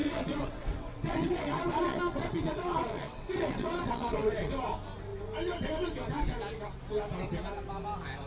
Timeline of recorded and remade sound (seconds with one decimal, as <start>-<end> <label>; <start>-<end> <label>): 0.0-4.5 remade; 4.5-8.3 recorded